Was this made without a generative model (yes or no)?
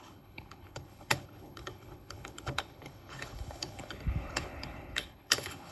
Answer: no